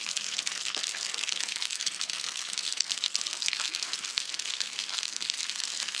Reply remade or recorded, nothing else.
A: remade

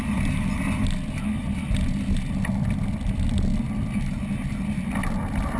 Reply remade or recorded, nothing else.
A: recorded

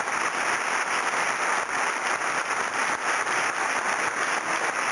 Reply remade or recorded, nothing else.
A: recorded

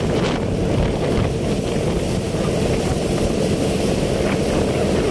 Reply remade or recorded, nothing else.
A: recorded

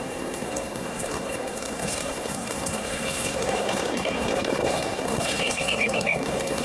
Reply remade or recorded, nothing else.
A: remade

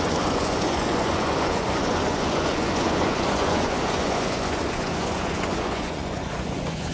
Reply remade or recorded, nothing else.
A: remade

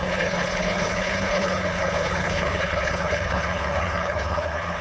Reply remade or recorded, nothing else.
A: remade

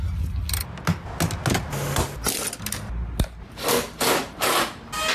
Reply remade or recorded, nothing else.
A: recorded